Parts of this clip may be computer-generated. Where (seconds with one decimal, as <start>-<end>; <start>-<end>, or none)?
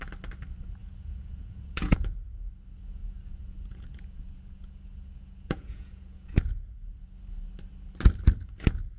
0.8-2.5; 3.0-6.6